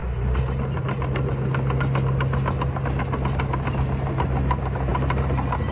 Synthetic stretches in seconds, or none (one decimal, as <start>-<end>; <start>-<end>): 4.9-5.7